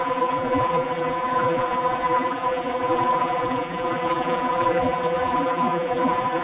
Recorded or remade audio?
remade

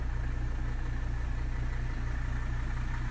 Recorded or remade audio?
recorded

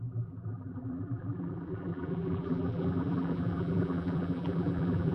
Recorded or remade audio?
remade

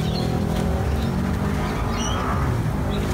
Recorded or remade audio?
recorded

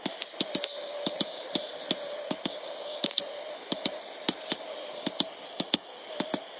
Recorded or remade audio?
remade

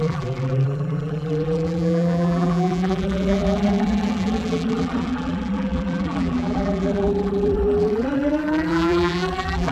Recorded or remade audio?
remade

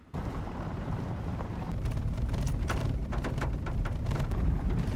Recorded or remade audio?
remade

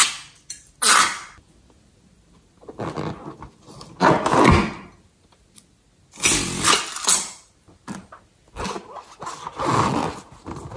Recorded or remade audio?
recorded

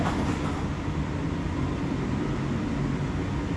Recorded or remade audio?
recorded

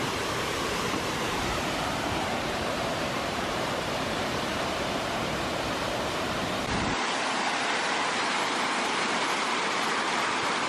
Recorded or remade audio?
remade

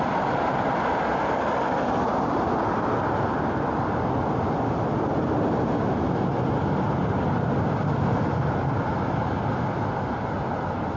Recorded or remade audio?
recorded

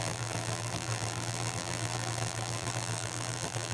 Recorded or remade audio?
remade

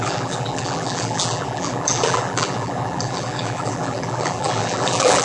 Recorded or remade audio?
remade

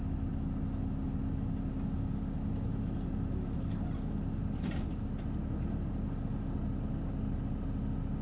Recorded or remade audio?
recorded